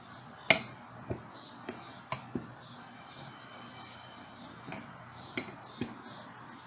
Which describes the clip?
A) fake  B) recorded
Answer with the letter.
B